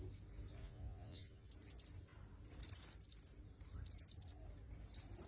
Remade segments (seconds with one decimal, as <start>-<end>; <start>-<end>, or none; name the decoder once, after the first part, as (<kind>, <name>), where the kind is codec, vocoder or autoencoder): 0.6-1.5 (vocoder, Vocos)